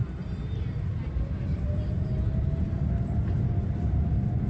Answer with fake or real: real